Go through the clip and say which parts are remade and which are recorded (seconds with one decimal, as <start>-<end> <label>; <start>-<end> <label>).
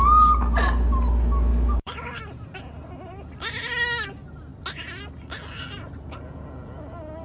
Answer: 0.0-1.5 recorded; 1.5-2.2 remade; 2.2-7.2 recorded